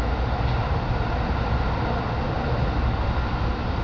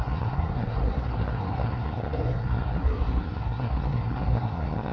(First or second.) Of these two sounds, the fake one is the second